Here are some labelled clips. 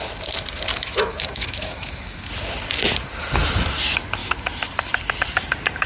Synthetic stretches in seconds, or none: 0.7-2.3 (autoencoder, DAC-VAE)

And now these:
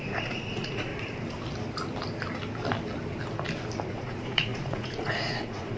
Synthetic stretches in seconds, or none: 0.0-0.9 (vocoder, Vocos); 3.9-5.8

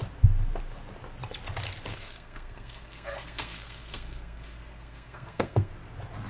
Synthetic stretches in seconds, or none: 1.9-5.7 (codec, SNAC)

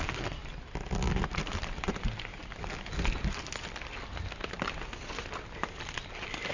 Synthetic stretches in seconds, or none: none

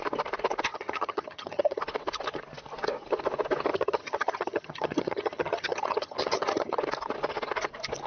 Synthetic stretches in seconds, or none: 0.7-1.8 (vocoder, HiFi-GAN); 3.7-6.8